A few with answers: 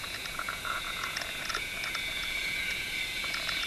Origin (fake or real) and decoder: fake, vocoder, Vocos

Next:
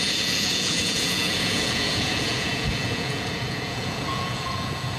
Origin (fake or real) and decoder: fake, vocoder, Vocos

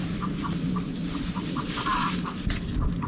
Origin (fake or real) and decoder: real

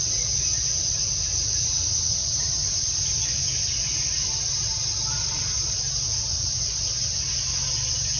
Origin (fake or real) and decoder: real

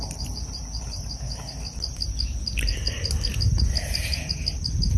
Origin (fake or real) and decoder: real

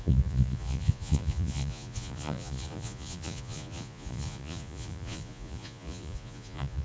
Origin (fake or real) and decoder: fake, vocoder, Vocos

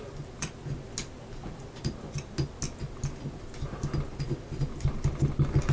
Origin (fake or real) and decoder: real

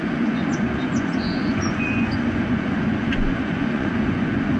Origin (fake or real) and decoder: fake, vocoder, Vocos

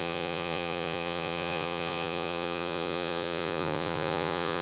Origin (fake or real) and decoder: fake, vocoder, Vocos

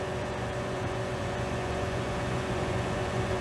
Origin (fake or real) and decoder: fake, vocoder, Vocos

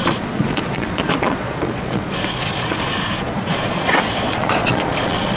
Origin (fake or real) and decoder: fake, vocoder, Vocos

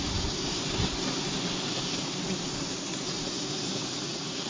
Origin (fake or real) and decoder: real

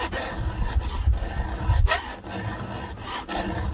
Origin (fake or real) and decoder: real